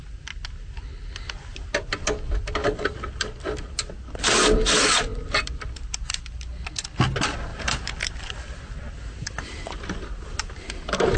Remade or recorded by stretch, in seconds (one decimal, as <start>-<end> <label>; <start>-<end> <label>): 0.0-2.6 recorded; 2.6-3.3 remade; 3.3-5.1 recorded; 5.1-6.7 remade; 6.7-7.5 recorded; 7.5-11.2 remade

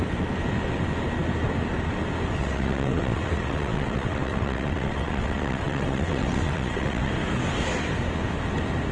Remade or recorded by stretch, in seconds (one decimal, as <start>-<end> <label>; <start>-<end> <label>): 0.0-2.4 recorded; 2.4-7.1 remade; 7.1-8.9 recorded

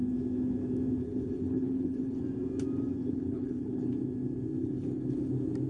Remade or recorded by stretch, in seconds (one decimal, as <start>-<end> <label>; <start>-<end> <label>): 0.0-1.0 recorded; 1.0-2.2 remade; 2.2-3.0 recorded; 3.0-3.9 remade; 3.9-4.6 recorded; 4.6-5.3 remade; 5.3-5.7 recorded

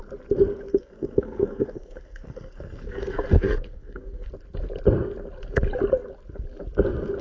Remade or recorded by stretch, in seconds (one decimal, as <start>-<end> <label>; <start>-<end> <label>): 0.0-0.7 recorded; 0.7-4.3 remade; 4.3-7.2 recorded

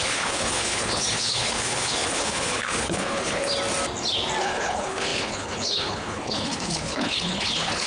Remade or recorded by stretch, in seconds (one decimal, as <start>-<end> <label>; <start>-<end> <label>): 0.0-3.5 remade; 3.5-4.4 recorded; 4.4-7.9 remade